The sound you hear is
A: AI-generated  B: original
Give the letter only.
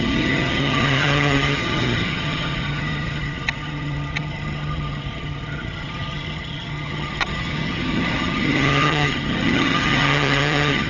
A